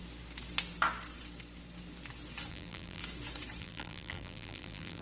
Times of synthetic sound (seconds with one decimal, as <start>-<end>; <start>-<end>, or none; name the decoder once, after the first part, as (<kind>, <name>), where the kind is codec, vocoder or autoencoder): 2.5-3.0 (vocoder, BigVGAN v2); 3.6-5.0